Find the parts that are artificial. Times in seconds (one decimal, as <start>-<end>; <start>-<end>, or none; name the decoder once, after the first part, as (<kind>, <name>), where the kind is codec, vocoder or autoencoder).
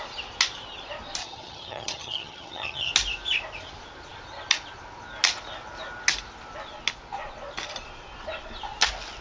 1.2-2.9 (vocoder, HiFi-GAN)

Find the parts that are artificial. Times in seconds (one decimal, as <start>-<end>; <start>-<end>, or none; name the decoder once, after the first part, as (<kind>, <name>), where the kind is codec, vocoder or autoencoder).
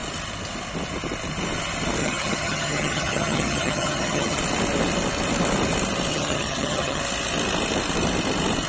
2.0-4.4 (vocoder, HiFi-GAN); 6.1-7.0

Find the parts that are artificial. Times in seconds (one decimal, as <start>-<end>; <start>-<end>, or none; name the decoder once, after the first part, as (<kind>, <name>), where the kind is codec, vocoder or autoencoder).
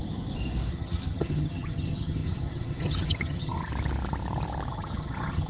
0.7-3.7 (vocoder, HiFi-GAN); 4.7-5.5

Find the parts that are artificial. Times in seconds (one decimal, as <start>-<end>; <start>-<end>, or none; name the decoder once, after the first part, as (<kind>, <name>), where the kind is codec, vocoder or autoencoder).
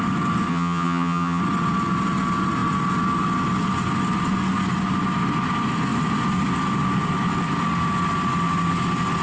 0.5-1.4 (vocoder, HiFi-GAN)